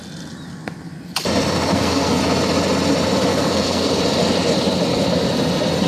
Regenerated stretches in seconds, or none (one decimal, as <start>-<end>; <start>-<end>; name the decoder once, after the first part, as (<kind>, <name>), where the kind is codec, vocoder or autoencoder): 1.7-2.2 (codec, SNAC); 3.3-3.9